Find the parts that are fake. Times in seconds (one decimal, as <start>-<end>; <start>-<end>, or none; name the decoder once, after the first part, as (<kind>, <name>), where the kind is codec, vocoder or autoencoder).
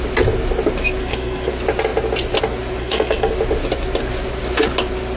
1.0-1.5 (codec, SNAC); 2.8-3.3